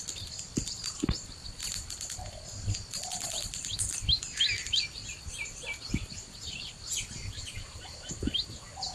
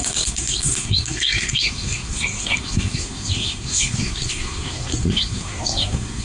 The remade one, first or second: second